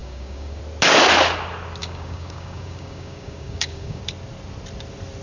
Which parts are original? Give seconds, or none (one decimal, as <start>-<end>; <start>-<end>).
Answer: 0.6-1.8; 4.0-5.2